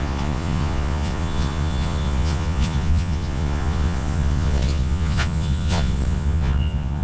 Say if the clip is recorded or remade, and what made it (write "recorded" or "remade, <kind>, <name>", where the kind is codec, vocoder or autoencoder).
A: remade, vocoder, Vocos